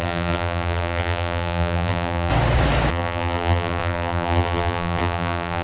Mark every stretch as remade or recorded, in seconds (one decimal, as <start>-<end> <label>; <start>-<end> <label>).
0.0-2.3 remade; 2.3-2.9 recorded; 2.9-5.6 remade